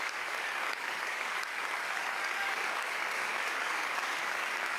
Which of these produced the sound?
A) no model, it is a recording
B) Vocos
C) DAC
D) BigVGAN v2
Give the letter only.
C